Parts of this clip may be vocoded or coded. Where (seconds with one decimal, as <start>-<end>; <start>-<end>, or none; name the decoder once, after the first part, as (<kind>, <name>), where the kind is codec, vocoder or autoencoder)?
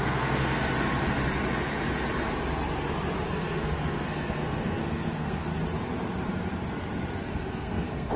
0.0-0.6 (codec, SNAC); 3.3-5.5; 7.3-8.2